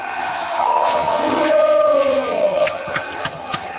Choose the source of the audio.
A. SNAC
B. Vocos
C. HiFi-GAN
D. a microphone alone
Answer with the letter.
C